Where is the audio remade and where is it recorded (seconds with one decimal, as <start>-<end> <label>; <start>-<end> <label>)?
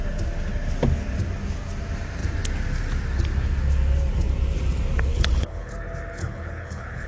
0.0-5.1 recorded; 5.1-5.7 remade; 5.7-6.2 recorded; 6.2-7.1 remade